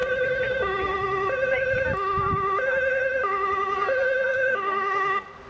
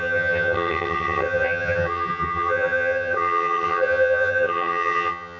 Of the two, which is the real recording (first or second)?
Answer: first